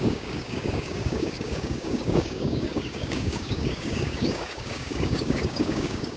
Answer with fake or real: fake